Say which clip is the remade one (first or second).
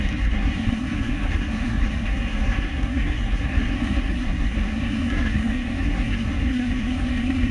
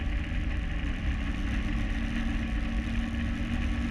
first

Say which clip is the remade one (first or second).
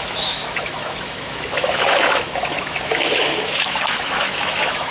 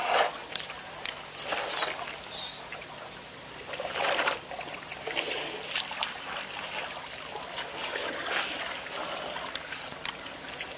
first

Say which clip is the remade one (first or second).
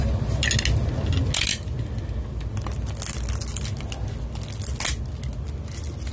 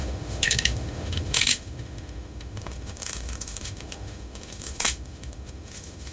second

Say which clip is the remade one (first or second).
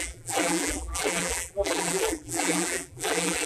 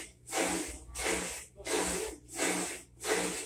first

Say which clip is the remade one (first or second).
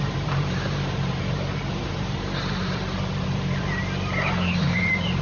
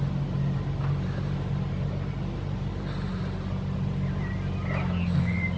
first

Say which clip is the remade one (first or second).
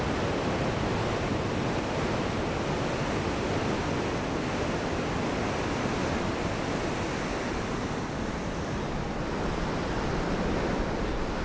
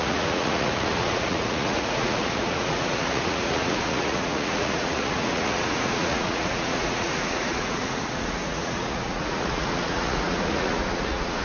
second